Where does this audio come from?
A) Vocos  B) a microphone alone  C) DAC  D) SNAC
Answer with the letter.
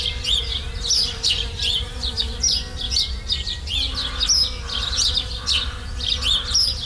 B